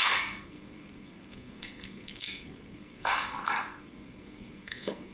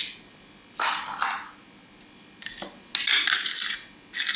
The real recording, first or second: second